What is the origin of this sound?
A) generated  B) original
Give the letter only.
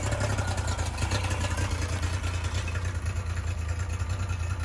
B